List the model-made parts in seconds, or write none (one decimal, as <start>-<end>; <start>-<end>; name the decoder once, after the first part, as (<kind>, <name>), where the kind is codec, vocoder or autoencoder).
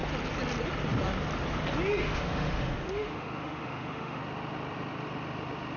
2.0-4.2 (autoencoder, DAC-VAE)